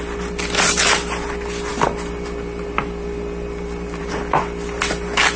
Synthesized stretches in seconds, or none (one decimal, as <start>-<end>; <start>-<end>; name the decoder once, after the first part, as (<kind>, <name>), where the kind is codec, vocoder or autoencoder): none